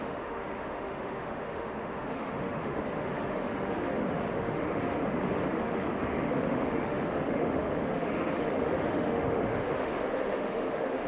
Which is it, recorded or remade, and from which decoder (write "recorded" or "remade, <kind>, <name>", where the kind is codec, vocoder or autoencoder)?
remade, autoencoder, DAC-VAE